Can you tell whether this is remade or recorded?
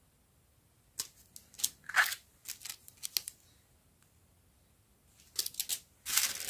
recorded